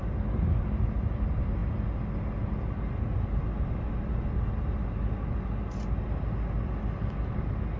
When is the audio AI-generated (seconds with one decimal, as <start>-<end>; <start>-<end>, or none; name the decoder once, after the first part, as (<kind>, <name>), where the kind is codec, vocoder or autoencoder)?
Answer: none